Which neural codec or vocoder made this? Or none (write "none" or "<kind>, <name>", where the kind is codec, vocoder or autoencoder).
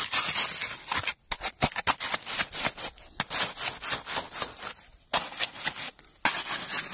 none